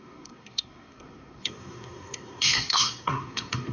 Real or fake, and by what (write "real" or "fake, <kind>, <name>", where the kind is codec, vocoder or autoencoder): fake, codec, SNAC